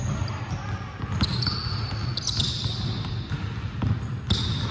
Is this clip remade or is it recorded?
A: recorded